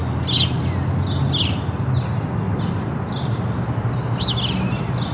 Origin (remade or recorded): recorded